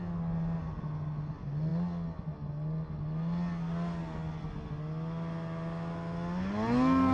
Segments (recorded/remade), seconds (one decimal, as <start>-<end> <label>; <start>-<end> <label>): 0.0-7.1 recorded